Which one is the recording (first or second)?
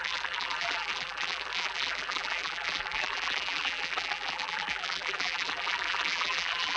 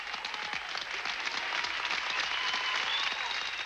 second